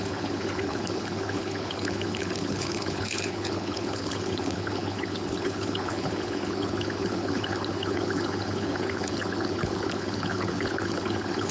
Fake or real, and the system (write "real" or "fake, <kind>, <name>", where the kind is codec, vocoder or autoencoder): fake, codec, HILCodec